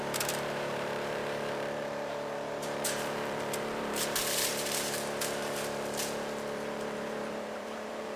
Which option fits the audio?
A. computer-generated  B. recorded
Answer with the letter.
A